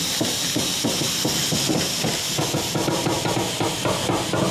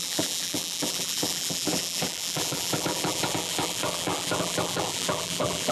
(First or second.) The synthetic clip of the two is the second